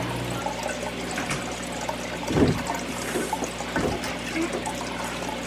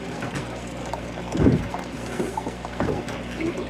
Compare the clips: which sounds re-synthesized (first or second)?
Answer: second